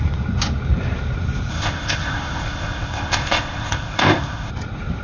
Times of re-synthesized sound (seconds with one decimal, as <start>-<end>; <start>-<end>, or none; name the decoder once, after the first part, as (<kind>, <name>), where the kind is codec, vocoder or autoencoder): 1.5-4.5 (codec, ZipCodec)